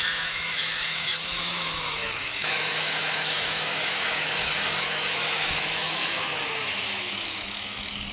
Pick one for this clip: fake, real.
fake